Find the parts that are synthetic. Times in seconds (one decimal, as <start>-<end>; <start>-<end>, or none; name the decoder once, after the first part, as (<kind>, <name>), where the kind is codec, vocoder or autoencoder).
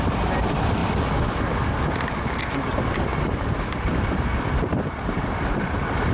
0.0-0.8 (vocoder, BigVGAN v2); 2.7-6.1